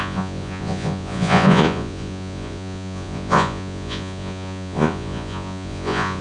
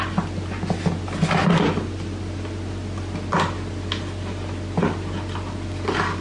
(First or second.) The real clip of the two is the second